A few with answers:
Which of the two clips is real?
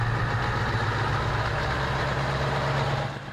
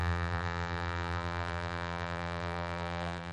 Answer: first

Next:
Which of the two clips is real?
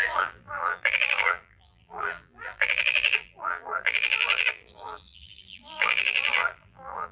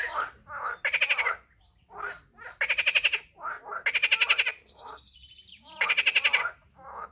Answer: second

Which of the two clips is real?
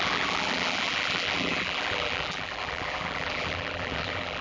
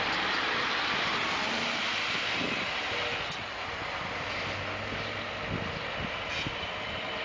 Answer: second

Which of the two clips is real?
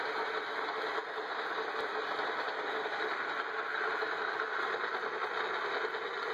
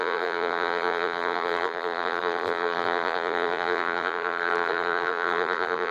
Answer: first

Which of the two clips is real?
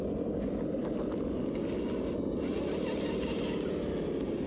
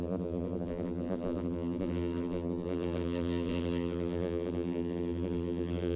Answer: first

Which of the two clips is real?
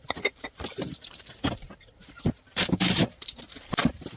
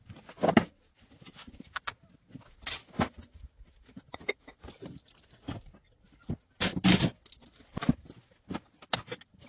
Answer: second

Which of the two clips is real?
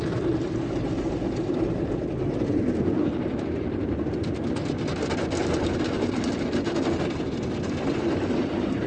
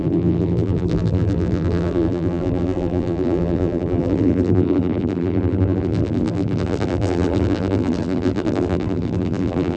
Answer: first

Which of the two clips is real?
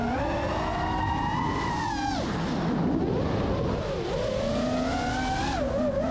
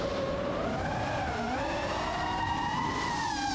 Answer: first